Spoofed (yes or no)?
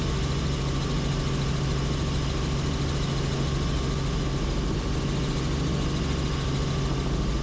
no